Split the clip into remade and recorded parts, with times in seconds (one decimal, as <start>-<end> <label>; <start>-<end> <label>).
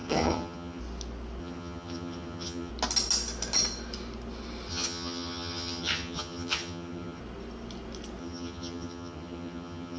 0.0-0.8 remade; 0.8-1.4 recorded; 1.4-2.7 remade; 2.7-4.7 recorded; 4.7-7.2 remade; 7.2-8.2 recorded; 8.2-10.0 remade